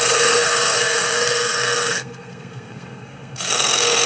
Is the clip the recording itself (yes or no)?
no